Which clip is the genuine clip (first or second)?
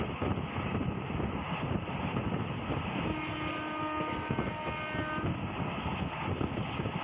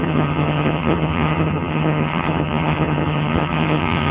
first